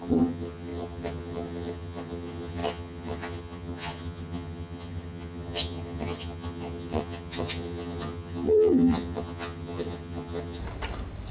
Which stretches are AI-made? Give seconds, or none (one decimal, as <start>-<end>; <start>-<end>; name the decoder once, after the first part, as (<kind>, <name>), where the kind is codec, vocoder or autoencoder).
0.0-10.6 (vocoder, HiFi-GAN)